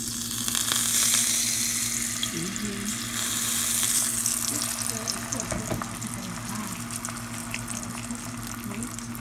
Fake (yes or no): no